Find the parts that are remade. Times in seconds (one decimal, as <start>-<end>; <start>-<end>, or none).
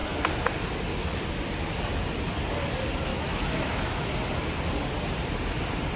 3.1-4.1